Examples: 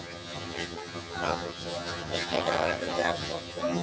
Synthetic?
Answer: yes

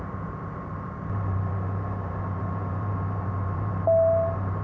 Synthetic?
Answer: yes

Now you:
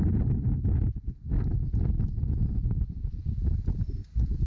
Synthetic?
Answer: no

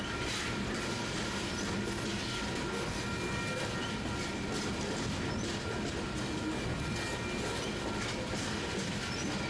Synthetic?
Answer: no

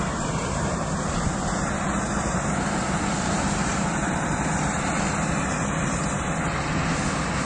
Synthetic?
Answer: yes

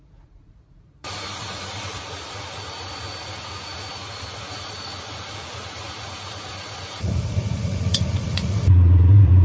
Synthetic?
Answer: yes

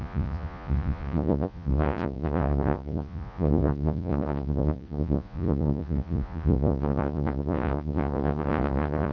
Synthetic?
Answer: yes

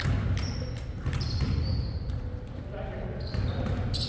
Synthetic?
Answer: no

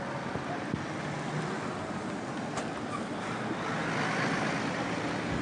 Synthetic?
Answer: no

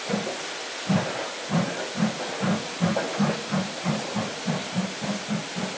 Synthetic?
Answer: no